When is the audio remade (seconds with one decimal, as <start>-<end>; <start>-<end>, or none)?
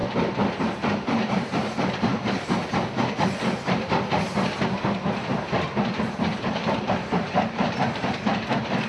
0.6-2.1; 6.0-8.9